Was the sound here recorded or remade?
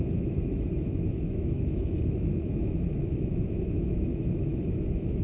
remade